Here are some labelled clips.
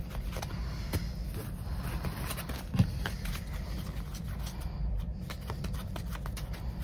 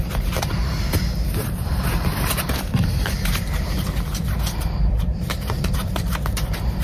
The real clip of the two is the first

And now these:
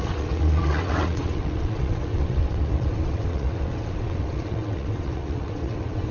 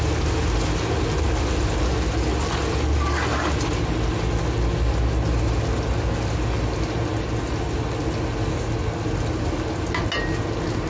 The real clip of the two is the second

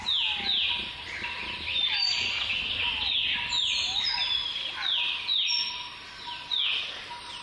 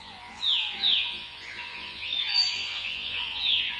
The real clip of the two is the first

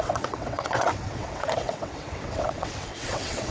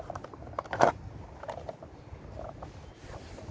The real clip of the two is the second